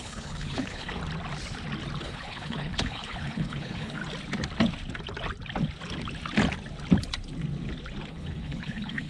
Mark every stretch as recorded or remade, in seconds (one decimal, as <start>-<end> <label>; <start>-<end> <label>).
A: 0.0-1.0 remade; 1.0-2.0 recorded; 2.0-4.0 remade; 4.0-8.1 recorded; 8.1-9.1 remade